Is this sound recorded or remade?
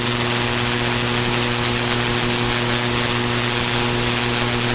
recorded